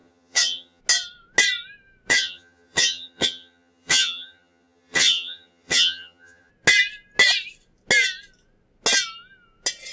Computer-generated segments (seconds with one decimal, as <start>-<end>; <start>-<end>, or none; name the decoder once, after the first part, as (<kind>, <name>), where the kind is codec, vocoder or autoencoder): 0.0-0.8 (vocoder, HiFi-GAN); 2.1-6.5